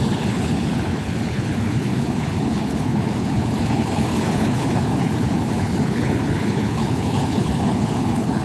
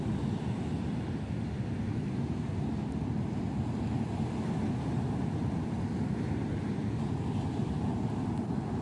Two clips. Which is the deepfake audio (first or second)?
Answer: first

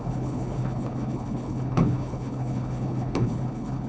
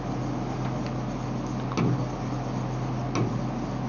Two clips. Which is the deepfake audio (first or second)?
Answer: first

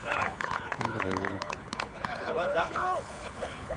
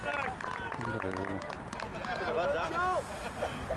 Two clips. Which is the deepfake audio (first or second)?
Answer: first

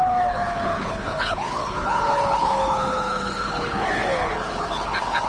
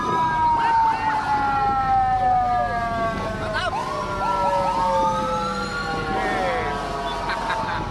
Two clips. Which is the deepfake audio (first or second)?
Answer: first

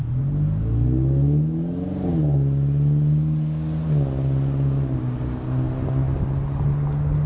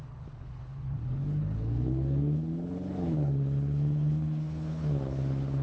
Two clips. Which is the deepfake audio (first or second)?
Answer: second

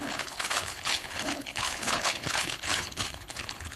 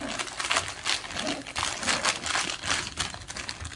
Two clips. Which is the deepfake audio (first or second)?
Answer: first